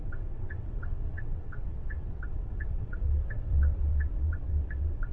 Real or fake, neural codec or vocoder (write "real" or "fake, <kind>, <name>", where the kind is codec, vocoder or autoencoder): fake, vocoder, WaveNeXt